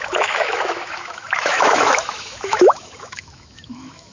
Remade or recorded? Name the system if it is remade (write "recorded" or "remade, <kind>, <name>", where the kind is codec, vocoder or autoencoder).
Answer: remade, autoencoder, DAC-VAE